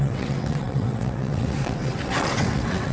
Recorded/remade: remade